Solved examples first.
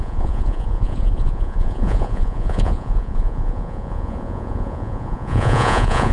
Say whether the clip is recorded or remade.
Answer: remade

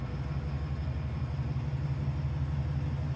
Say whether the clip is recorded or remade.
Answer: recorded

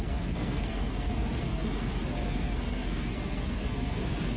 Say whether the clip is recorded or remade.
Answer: remade